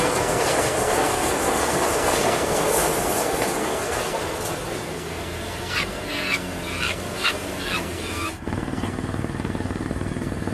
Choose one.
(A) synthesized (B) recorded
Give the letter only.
A